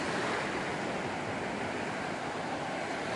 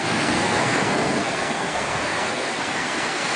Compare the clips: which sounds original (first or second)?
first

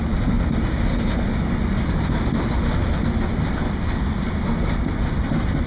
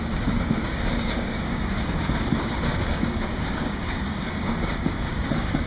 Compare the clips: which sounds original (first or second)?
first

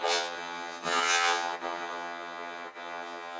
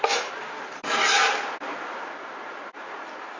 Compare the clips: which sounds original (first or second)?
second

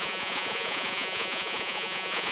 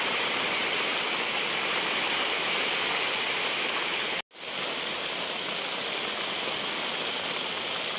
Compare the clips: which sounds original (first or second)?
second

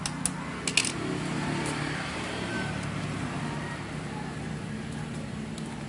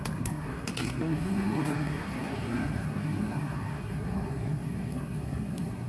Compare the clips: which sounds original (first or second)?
first